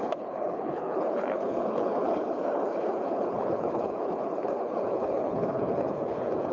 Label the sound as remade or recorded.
remade